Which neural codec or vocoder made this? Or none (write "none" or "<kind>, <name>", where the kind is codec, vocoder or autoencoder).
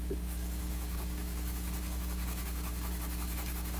codec, DAC